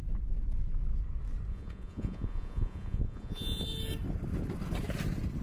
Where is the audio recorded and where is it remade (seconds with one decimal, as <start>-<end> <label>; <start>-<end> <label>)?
0.0-1.5 recorded; 1.5-3.6 remade; 3.6-5.4 recorded